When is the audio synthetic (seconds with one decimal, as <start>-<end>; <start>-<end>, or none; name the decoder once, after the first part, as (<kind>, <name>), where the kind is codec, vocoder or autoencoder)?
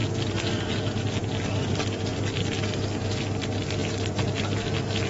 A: 2.1-3.4 (vocoder, BigVGAN v2); 3.8-4.6